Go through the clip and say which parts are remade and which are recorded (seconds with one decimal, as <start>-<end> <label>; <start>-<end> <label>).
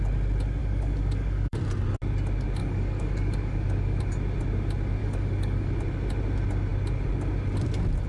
0.0-0.6 recorded; 0.6-1.6 remade; 1.6-2.6 recorded; 2.6-4.0 remade; 4.0-5.0 recorded; 5.0-5.7 remade; 5.7-8.1 recorded